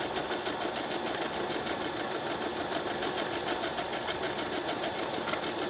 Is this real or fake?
real